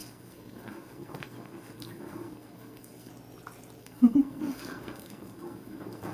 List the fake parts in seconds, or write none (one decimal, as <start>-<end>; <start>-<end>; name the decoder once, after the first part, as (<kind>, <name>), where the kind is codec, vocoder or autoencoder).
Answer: 0.0-3.1 (codec, SNAC); 3.8-6.1